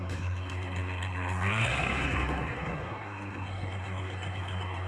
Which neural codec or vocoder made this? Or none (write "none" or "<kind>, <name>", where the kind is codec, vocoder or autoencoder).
codec, SNAC